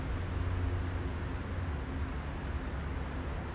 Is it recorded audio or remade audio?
recorded